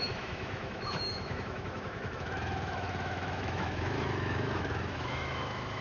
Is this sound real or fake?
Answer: fake